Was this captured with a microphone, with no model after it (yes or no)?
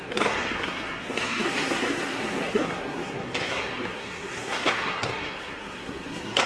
no